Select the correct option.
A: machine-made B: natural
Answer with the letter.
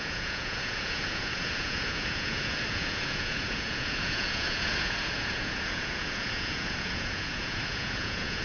A